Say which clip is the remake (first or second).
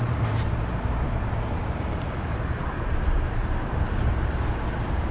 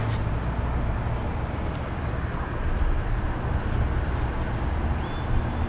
first